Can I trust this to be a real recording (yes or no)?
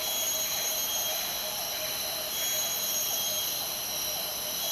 yes